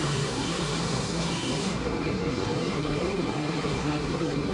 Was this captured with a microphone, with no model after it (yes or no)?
no